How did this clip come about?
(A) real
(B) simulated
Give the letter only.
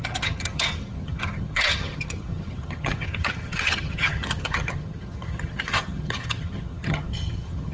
B